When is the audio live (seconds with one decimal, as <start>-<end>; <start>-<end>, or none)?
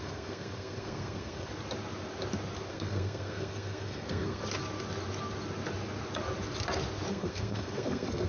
1.5-2.7; 4.4-7.1